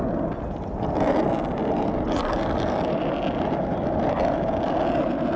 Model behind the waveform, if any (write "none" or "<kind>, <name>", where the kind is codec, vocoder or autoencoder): none